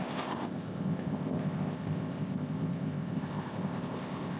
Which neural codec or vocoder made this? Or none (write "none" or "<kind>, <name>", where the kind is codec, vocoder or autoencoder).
codec, ZipCodec